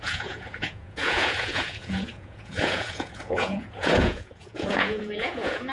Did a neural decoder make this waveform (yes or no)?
yes